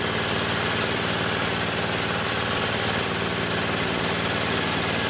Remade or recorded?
recorded